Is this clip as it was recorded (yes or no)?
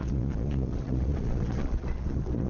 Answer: no